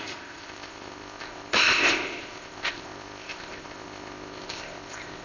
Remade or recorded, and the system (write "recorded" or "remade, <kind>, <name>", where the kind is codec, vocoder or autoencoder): remade, codec, ZipCodec